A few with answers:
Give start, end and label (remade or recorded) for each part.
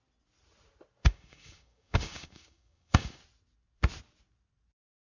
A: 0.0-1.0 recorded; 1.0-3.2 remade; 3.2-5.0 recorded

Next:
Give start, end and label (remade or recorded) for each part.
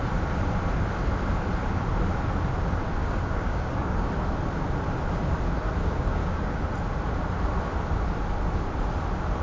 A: 0.0-3.0 recorded; 3.0-4.1 remade; 4.1-5.8 recorded; 5.8-6.6 remade; 6.6-9.4 recorded